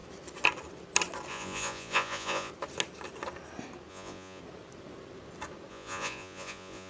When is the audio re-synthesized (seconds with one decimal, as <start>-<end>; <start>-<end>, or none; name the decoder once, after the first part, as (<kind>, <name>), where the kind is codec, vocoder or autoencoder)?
1.3-2.5 (vocoder, Vocos); 3.9-4.4; 5.7-6.9